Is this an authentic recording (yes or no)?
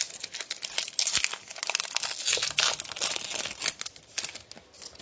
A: yes